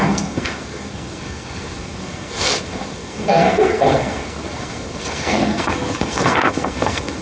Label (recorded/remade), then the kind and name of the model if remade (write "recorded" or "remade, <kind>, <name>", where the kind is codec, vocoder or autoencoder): remade, codec, SNAC